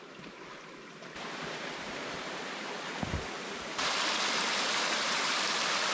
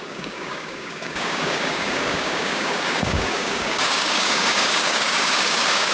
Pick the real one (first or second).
first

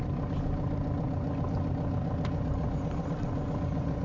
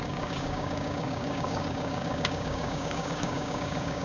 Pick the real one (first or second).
first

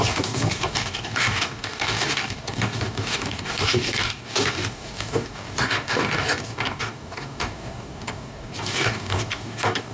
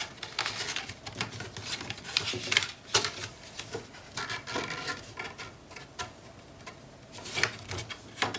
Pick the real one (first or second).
second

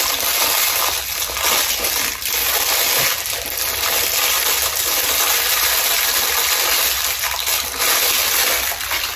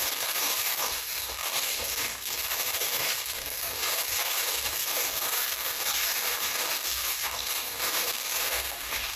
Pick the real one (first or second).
first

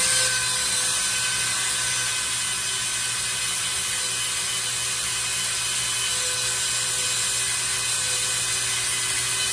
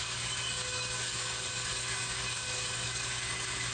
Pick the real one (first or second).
first